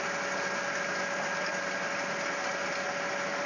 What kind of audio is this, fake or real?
real